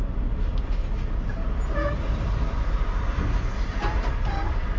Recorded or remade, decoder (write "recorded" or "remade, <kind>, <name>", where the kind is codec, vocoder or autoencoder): remade, vocoder, BigVGAN v2